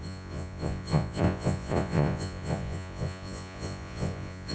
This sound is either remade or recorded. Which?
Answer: remade